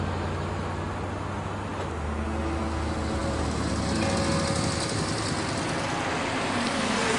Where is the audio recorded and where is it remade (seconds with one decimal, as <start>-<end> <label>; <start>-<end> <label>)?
0.0-7.2 recorded

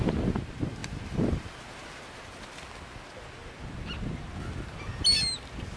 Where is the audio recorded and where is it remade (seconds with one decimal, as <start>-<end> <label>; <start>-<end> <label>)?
0.0-5.8 recorded

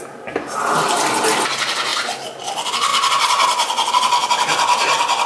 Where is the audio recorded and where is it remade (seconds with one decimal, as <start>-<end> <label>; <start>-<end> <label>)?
0.0-5.3 recorded

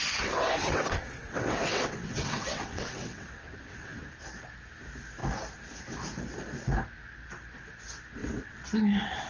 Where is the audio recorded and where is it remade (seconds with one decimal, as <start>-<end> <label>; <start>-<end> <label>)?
0.0-4.0 remade; 4.0-8.2 recorded; 8.2-9.3 remade

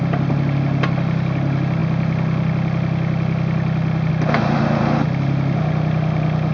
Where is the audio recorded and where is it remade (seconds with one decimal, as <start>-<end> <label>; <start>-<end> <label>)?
0.0-6.5 recorded

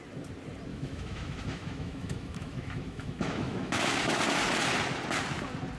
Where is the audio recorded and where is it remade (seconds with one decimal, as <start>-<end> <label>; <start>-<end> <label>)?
0.0-0.7 recorded; 0.7-4.2 remade; 4.2-5.8 recorded